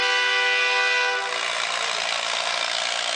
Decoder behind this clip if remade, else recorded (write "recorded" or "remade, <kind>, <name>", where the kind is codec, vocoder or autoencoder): recorded